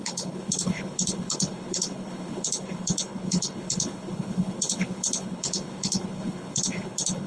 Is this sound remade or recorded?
remade